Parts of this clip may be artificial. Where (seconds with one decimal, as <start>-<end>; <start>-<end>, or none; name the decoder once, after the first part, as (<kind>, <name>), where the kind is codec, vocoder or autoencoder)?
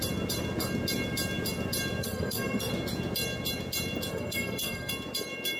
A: 2.0-2.7 (codec, SNAC); 4.1-4.9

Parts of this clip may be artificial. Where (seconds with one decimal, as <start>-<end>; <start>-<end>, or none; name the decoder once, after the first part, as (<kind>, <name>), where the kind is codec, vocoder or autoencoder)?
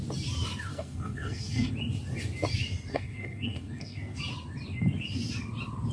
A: 0.7-1.7 (codec, SNAC); 2.9-4.2